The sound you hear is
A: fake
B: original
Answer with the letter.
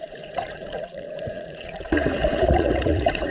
A